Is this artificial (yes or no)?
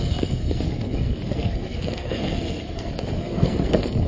yes